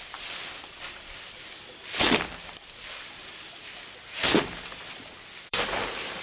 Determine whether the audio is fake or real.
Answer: fake